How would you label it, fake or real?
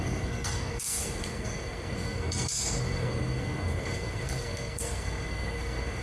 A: fake